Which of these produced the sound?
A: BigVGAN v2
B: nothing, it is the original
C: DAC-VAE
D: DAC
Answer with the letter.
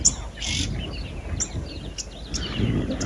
B